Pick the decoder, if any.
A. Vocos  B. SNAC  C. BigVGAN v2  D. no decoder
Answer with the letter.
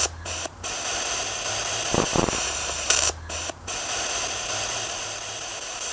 C